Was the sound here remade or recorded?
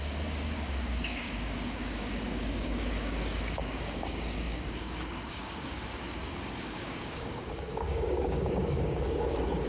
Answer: remade